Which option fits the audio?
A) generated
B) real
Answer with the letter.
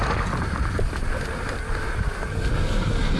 B